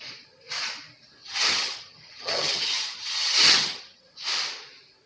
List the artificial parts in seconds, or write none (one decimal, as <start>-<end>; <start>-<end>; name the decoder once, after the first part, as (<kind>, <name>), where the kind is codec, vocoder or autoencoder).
1.2-4.0 (vocoder, HiFi-GAN)